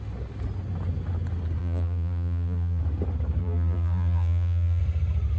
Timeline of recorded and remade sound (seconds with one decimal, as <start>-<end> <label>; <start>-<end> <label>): 0.0-1.6 recorded; 1.6-2.8 remade; 2.8-3.4 recorded; 3.4-4.8 remade; 4.8-5.4 recorded